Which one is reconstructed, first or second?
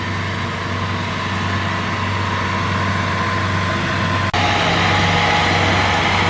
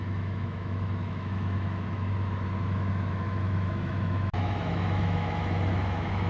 second